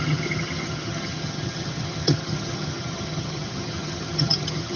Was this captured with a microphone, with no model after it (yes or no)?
no